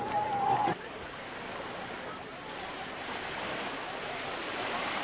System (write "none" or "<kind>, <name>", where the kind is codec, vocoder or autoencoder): vocoder, BigVGAN v2